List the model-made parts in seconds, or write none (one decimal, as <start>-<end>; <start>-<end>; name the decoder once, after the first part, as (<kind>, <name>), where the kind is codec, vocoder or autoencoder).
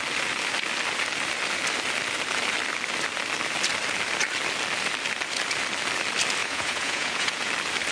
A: 6.4-7.5 (vocoder, Vocos)